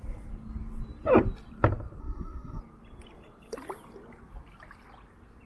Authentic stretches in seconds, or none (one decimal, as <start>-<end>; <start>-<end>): 0.0-2.0; 2.6-5.5